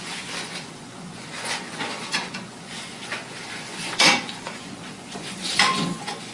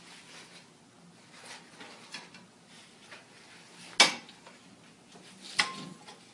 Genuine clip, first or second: second